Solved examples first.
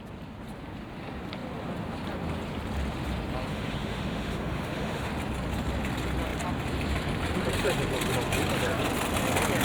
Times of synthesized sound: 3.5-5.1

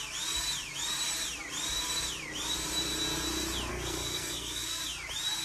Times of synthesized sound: 3.7-4.8

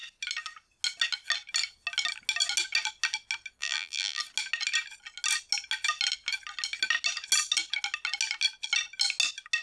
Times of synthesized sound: 3.6-4.2

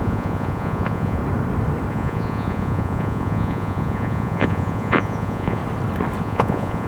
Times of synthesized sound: 0.0-1.2; 1.9-5.6; 6.2-6.9

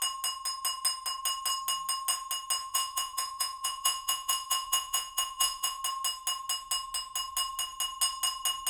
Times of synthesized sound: 2.6-5.8